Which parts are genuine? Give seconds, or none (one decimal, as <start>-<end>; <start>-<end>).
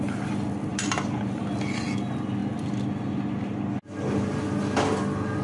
0.0-0.7; 1.4-5.4